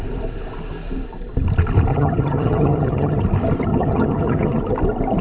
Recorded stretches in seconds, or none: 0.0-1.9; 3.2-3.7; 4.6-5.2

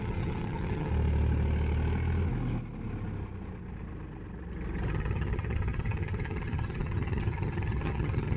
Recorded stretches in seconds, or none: 0.9-4.9